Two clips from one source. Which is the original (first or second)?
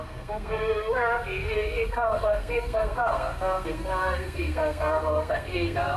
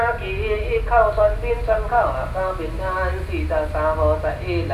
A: second